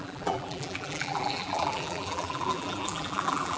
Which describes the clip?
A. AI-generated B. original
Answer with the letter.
A